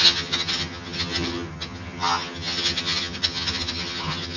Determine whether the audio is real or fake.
fake